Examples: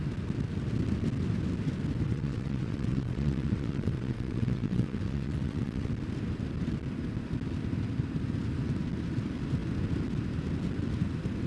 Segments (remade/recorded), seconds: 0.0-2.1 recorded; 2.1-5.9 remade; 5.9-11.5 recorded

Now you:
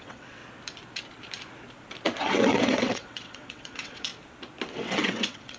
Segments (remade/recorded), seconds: 0.0-0.4 remade; 0.4-2.2 recorded; 2.2-4.1 remade; 4.1-4.7 recorded; 4.7-5.6 remade

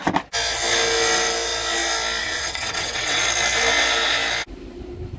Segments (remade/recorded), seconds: 0.0-2.2 recorded; 2.2-3.2 remade; 3.2-5.2 recorded

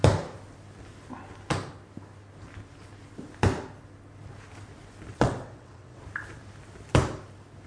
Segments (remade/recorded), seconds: 0.0-5.1 recorded; 5.1-6.0 remade; 6.0-7.7 recorded